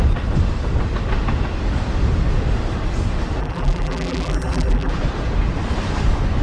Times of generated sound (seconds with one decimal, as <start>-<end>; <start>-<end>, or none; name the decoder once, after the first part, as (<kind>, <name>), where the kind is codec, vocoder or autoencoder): 3.4-4.9 (vocoder, BigVGAN v2)